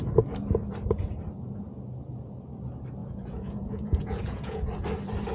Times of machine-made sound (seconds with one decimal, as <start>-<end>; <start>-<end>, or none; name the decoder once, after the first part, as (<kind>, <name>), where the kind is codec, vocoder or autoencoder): 3.0-4.7 (vocoder, Vocos)